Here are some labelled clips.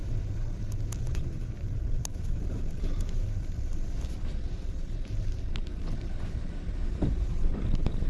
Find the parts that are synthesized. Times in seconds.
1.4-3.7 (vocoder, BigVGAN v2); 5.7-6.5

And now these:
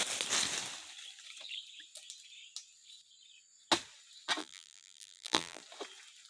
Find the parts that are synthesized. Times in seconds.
4.4-5.6 (vocoder, BigVGAN v2)

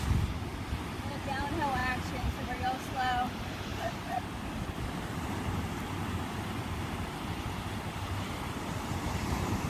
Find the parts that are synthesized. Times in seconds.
0.0-0.5 (vocoder, BigVGAN v2); 1.1-3.7; 6.6-9.7

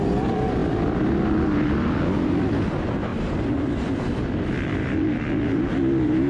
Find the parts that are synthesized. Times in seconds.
0.0-6.3 (vocoder, BigVGAN v2)

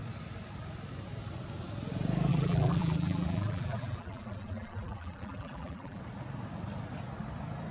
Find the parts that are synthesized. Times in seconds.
2.3-6.0 (vocoder, BigVGAN v2)

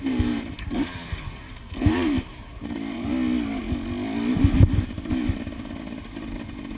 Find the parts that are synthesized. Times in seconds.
0.0-3.1 (vocoder, BigVGAN v2)